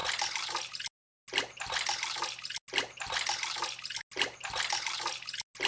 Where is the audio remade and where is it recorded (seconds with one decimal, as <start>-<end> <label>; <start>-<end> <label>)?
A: 0.0-5.7 recorded